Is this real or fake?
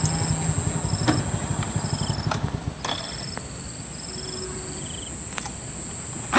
real